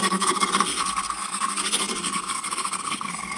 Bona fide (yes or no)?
no